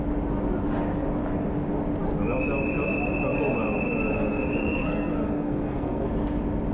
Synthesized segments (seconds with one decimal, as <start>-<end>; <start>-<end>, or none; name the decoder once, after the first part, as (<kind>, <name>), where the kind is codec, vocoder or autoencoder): 4.6-6.1 (codec, SNAC)